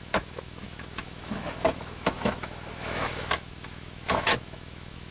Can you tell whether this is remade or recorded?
remade